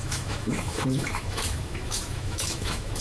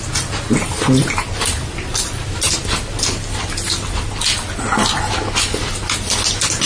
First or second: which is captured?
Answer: second